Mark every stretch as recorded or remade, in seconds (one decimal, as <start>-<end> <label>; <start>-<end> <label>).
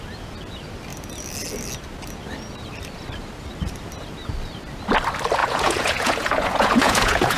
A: 0.0-5.4 recorded; 5.4-7.4 remade